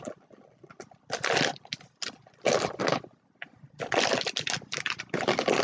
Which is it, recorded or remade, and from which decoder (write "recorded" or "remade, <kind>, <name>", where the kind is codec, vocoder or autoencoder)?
recorded